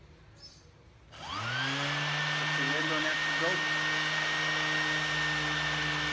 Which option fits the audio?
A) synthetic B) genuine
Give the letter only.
B